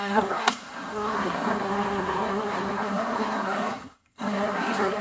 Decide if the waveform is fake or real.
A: fake